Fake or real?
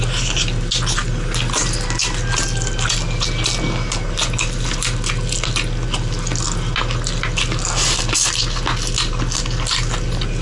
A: real